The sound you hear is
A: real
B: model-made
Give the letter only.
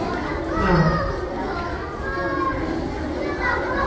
A